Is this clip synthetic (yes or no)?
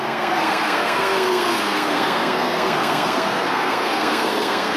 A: yes